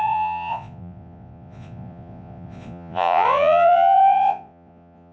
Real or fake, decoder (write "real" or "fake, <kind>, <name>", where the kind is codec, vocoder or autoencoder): fake, vocoder, Vocos